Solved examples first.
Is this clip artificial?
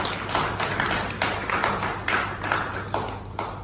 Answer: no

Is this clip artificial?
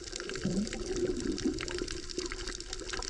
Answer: yes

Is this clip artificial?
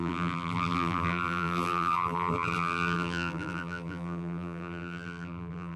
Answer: yes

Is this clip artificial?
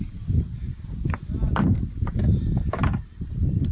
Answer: yes